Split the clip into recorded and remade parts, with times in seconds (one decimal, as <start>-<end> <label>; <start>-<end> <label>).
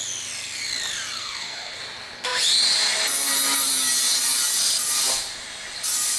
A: 0.0-1.2 recorded; 1.2-1.8 remade; 1.8-6.2 recorded